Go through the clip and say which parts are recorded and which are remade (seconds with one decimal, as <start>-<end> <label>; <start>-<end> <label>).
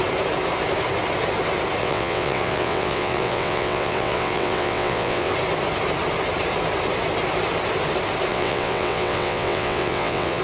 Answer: 0.0-1.8 recorded; 1.8-5.3 remade; 5.3-8.3 recorded; 8.3-10.4 remade